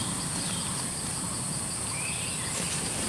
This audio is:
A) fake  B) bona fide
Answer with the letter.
B